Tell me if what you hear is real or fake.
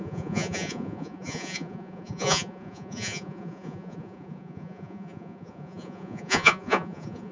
fake